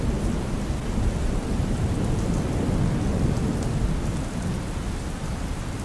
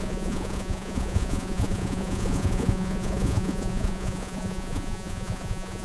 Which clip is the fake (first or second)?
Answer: second